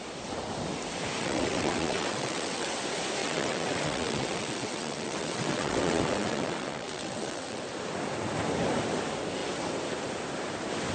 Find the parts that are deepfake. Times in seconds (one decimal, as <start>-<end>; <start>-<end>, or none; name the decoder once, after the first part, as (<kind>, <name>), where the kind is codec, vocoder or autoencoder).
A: 1.2-2.8 (vocoder, WaveNeXt); 3.2-7.6